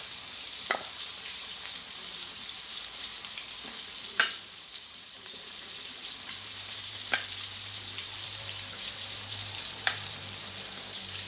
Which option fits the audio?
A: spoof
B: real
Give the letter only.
A